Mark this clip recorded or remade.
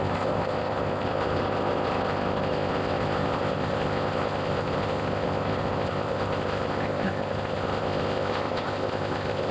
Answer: remade